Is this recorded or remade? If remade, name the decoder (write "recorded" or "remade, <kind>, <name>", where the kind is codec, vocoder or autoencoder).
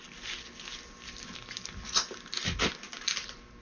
recorded